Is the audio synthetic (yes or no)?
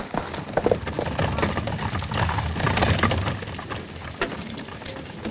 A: no